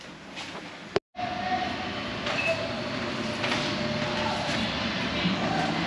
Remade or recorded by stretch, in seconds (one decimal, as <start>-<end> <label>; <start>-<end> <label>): 0.0-5.9 recorded